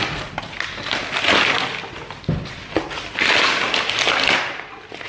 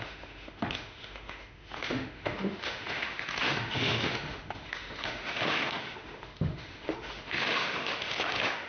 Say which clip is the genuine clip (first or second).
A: first